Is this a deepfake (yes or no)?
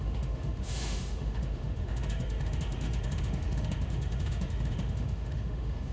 yes